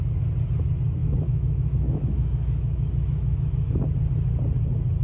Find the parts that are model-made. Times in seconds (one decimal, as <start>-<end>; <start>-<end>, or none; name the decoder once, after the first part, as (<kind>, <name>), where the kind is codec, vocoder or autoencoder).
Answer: 1.0-3.7 (autoencoder, DAC-VAE)